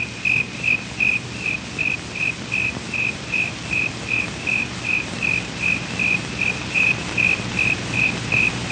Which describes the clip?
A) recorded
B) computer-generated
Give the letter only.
A